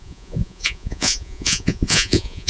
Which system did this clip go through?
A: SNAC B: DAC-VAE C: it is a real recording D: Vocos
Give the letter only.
D